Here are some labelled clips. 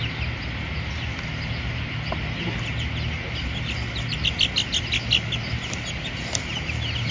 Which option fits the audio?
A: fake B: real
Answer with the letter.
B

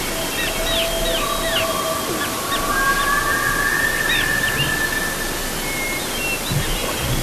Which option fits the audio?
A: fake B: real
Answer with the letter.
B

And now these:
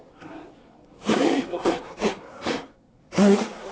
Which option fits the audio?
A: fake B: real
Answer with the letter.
A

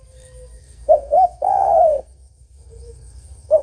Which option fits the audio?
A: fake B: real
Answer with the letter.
A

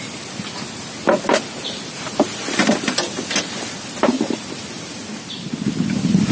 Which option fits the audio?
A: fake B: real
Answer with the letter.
B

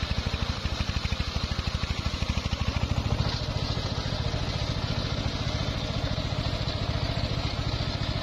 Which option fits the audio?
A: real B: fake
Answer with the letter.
A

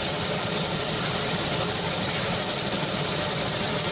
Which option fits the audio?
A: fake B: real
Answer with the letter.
B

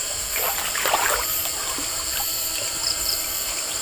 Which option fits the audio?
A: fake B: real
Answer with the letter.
A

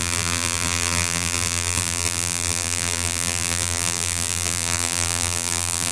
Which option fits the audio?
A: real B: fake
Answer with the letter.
B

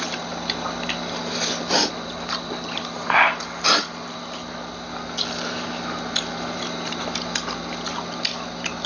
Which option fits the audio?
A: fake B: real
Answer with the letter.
B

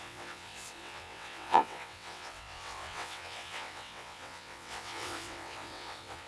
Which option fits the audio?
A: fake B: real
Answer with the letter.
A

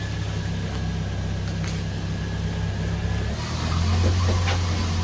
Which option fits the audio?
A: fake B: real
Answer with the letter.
B